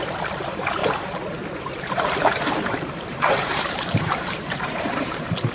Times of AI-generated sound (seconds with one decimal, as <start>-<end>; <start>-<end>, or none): 0.0-0.8; 1.6-5.5